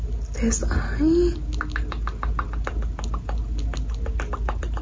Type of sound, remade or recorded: recorded